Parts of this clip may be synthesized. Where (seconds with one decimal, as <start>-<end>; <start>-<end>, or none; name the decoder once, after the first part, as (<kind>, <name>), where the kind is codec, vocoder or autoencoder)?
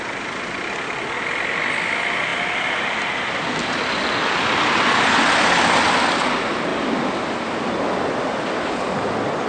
none